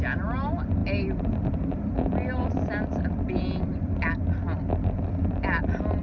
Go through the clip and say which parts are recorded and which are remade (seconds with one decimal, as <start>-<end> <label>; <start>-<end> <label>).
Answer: 0.0-6.0 recorded